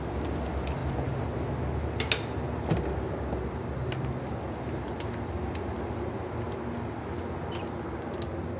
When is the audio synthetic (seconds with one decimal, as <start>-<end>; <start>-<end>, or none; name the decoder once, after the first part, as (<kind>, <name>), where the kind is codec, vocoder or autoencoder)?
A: none